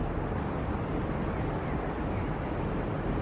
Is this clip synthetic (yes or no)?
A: no